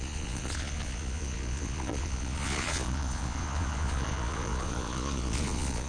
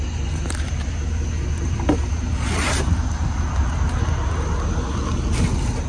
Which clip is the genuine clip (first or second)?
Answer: second